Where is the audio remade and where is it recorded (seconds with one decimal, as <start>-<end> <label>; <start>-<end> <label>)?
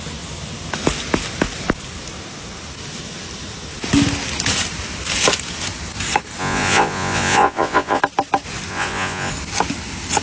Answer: 0.0-6.4 recorded; 6.4-8.0 remade; 8.0-8.7 recorded; 8.7-9.3 remade; 9.3-10.2 recorded